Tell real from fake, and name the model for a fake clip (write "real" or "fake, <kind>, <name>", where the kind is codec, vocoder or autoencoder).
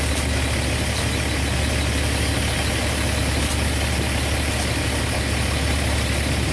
real